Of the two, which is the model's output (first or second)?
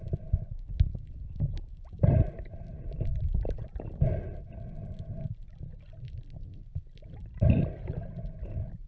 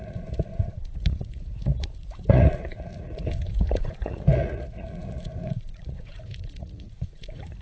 second